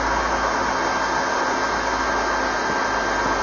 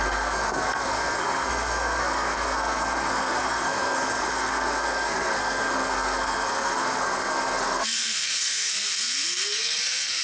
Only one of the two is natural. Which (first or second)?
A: first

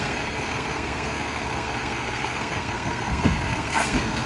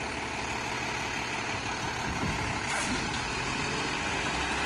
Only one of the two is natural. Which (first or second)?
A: second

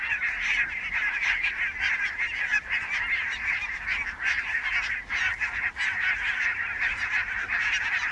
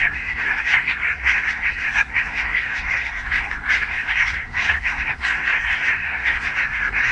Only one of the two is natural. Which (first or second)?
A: first